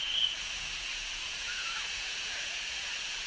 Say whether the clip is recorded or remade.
remade